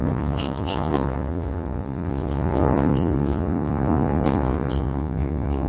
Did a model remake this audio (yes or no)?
yes